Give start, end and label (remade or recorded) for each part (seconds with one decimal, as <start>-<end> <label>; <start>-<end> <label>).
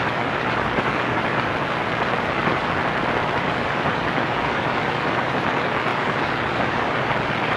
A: 0.0-1.5 remade; 1.5-2.2 recorded; 2.2-2.8 remade; 2.8-3.4 recorded; 3.4-7.6 remade